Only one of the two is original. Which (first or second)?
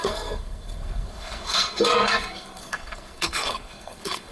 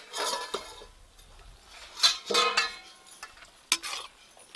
second